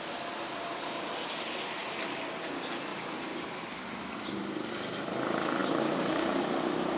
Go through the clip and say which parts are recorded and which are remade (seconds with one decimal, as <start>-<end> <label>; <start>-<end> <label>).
0.0-2.9 recorded; 2.9-3.7 remade; 3.7-5.6 recorded; 5.6-6.4 remade; 6.4-7.0 recorded